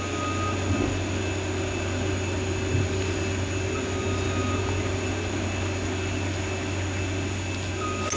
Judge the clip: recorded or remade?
recorded